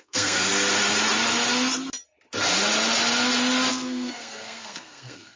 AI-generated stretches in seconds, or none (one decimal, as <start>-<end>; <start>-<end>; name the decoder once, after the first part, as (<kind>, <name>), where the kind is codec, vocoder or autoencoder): 0.0-0.5 (codec, SNAC); 3.7-5.4